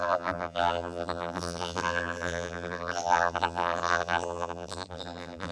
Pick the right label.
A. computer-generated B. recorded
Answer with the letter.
A